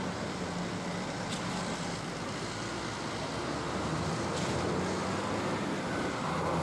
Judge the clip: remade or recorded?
recorded